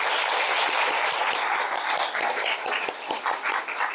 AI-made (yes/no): no